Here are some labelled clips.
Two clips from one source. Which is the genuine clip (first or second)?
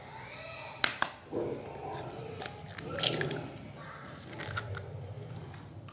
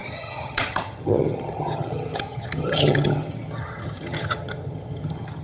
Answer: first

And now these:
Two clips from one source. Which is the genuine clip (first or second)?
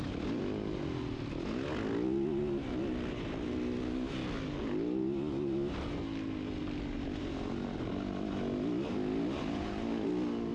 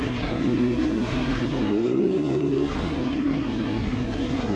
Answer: first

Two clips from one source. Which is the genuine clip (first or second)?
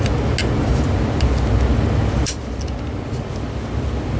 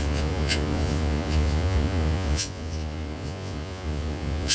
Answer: first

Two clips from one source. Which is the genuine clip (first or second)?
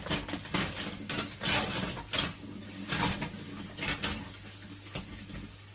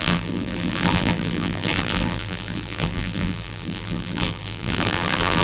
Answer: first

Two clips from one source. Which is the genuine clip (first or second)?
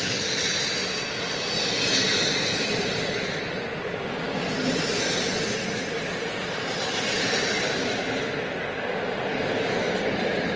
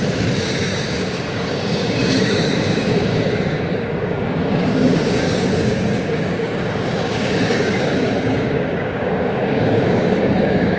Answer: first